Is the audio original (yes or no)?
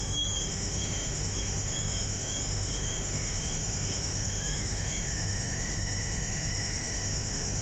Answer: no